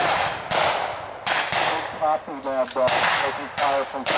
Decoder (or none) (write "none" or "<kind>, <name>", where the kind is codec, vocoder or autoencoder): none